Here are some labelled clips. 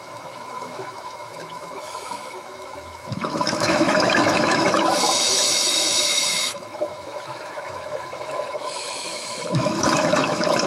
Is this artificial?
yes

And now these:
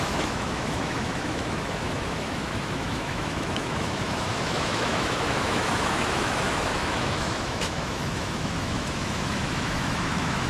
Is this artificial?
yes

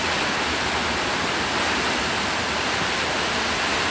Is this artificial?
no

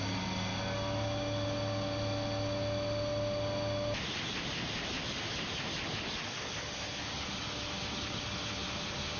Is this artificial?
no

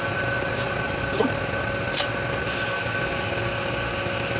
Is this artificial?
no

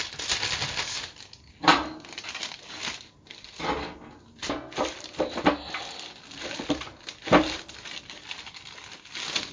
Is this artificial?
no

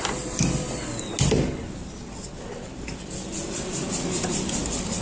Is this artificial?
no